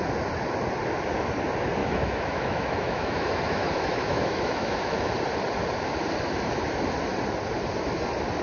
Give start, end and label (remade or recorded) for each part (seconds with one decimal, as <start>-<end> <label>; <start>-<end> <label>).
0.0-1.8 recorded; 1.8-5.1 remade; 5.1-8.4 recorded